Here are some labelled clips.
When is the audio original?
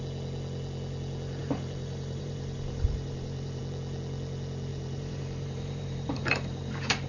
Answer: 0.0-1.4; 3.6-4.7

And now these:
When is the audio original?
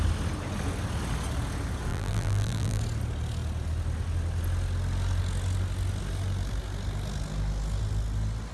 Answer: 0.0-1.9; 2.8-8.5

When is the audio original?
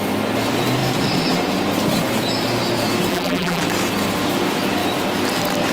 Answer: 0.0-3.1; 3.6-5.7